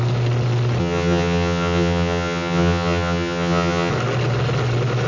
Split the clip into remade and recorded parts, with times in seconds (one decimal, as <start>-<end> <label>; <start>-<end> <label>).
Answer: 0.0-0.8 recorded; 0.8-3.9 remade; 3.9-5.1 recorded